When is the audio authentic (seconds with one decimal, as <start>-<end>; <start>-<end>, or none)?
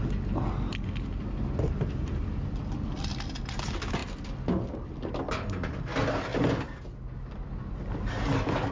0.0-8.7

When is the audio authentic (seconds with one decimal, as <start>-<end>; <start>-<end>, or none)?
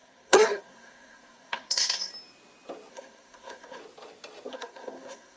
2.1-2.9; 3.8-4.5